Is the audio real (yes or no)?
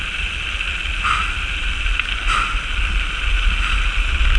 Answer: yes